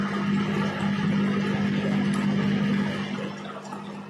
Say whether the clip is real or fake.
real